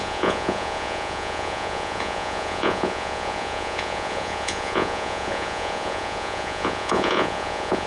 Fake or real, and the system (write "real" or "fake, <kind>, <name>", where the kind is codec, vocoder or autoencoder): fake, vocoder, Vocos